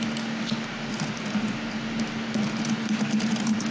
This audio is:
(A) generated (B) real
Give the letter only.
B